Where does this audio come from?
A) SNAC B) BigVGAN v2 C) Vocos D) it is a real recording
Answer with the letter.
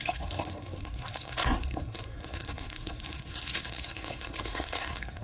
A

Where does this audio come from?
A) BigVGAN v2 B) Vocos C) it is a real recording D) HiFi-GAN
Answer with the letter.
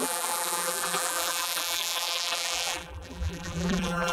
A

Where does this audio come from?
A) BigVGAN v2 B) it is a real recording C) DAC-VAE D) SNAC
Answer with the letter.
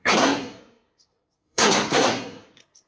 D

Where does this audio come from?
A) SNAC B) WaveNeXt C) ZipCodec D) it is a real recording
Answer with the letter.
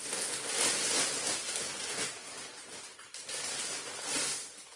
D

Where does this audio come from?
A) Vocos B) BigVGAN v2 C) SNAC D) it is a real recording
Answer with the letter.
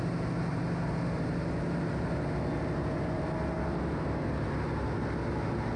D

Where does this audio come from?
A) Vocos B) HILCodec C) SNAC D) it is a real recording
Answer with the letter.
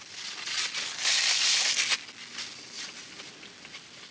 D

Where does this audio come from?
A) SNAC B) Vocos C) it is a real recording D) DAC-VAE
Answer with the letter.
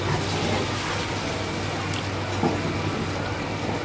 C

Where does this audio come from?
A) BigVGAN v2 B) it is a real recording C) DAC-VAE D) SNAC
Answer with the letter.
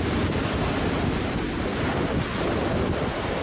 B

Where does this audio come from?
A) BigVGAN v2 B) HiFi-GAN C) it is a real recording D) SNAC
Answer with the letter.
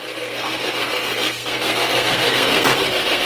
D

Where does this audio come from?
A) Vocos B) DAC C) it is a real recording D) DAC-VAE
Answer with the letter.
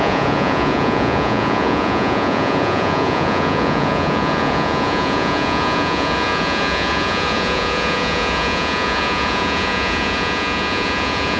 A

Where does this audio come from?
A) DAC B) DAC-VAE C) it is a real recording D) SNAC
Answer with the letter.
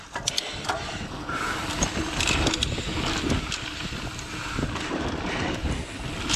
C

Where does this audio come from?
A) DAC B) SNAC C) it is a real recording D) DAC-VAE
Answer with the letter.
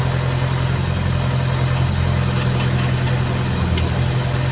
C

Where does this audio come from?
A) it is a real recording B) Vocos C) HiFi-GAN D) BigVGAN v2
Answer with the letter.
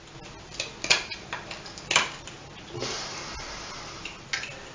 A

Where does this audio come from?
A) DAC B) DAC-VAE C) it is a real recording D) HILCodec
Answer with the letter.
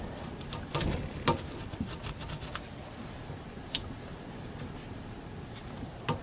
C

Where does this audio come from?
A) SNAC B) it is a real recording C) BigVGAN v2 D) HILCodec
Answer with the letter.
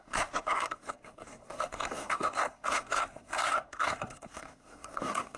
A